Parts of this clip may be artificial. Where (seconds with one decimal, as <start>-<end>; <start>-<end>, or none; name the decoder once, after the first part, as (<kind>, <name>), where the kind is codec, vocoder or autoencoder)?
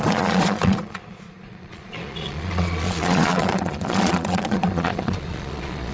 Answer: 0.0-5.9 (vocoder, Vocos)